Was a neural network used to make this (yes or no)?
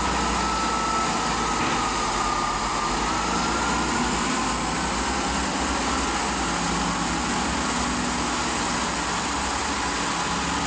no